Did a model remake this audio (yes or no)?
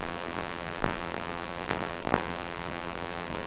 yes